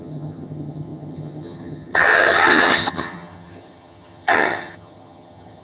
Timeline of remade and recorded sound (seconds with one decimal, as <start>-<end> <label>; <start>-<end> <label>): 0.0-5.6 remade